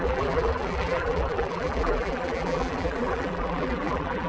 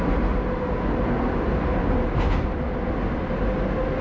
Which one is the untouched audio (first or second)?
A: second